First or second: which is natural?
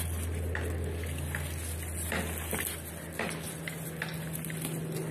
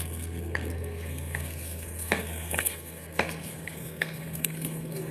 first